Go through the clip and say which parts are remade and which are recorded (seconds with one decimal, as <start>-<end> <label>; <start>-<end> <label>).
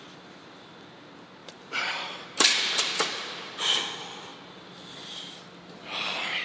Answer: 0.0-1.4 recorded; 1.4-3.8 remade; 3.8-6.4 recorded